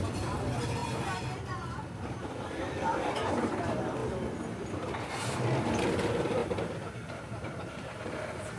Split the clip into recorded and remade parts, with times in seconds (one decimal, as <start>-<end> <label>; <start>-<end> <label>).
0.0-6.4 recorded; 6.4-8.1 remade; 8.1-8.6 recorded